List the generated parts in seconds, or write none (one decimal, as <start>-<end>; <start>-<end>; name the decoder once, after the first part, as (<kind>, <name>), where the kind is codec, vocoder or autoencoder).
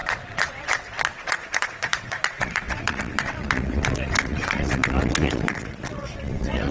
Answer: 0.0-6.7 (vocoder, WaveNeXt)